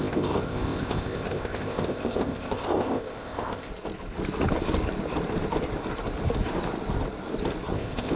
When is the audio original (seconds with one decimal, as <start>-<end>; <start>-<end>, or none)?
3.7-7.7